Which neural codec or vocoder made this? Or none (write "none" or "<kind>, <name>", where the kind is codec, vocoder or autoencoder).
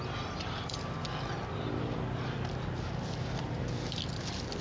none